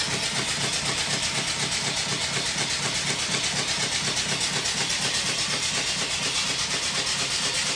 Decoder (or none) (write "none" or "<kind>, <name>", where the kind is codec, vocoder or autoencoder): none